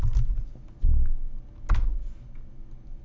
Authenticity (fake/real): real